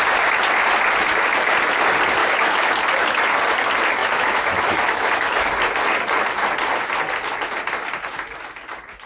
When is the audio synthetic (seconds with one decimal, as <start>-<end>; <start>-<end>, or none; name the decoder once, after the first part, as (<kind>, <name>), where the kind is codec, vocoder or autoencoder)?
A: 2.2-2.7 (autoencoder, DAC-VAE); 4.0-5.5